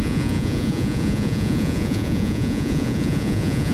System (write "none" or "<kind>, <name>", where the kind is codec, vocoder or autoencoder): vocoder, Vocos